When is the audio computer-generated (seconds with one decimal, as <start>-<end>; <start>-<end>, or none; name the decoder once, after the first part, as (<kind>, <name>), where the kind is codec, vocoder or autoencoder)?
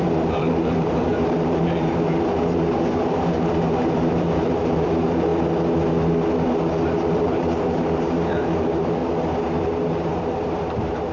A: 0.0-5.3 (vocoder, BigVGAN v2); 7.1-9.0; 9.6-11.1